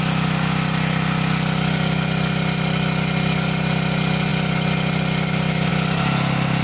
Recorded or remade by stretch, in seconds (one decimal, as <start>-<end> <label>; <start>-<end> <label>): 0.0-6.6 recorded